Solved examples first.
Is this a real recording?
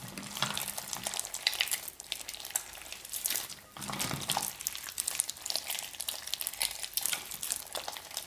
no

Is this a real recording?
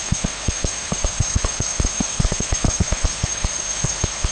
no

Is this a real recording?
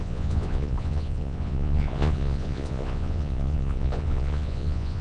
no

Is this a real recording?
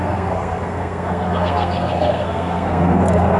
no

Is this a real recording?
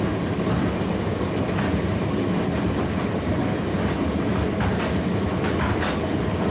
yes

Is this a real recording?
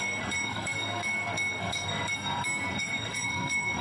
no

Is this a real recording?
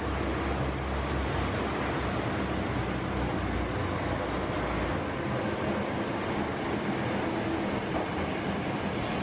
yes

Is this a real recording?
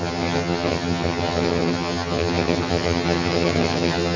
no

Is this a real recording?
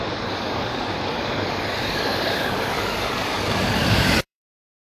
no